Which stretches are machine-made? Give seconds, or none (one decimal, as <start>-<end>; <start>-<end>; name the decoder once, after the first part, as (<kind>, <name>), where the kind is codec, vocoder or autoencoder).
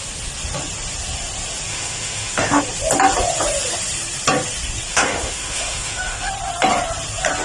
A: 1.7-2.6 (autoencoder, DAC-VAE); 4.9-6.3